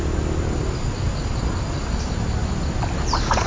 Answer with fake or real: real